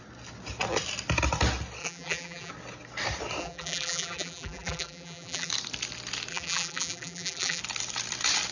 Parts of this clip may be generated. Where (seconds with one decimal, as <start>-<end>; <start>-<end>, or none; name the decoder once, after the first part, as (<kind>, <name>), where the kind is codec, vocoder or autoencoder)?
1.8-2.5 (vocoder, BigVGAN v2); 3.4-5.5; 6.3-7.6